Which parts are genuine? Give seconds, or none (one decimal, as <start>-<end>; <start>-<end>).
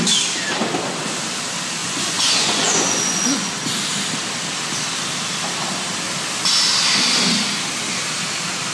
0.0-1.8; 3.5-8.7